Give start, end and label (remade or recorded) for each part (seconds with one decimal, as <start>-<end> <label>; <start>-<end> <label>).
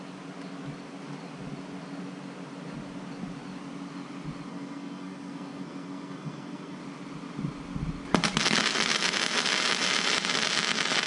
0.0-4.5 recorded; 4.5-6.8 remade; 6.8-11.1 recorded